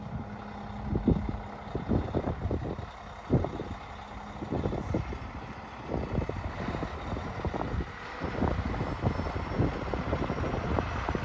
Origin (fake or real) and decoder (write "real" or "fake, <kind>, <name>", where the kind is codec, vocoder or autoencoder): real